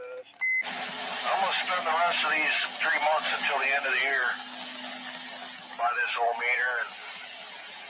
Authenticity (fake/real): real